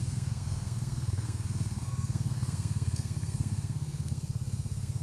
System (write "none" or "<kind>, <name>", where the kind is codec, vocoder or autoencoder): codec, SNAC